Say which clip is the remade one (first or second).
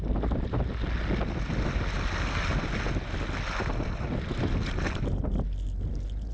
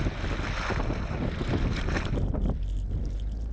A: second